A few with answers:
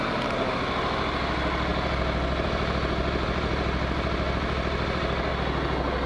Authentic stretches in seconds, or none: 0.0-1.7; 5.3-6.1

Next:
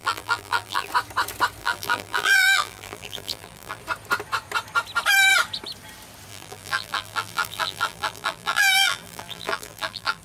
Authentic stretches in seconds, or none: 0.9-1.6; 3.8-6.3

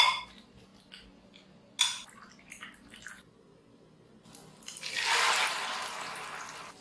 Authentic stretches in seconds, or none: 0.7-2.4; 5.8-6.8